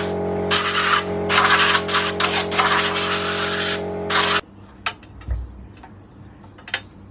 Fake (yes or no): no